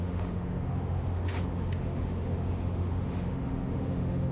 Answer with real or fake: fake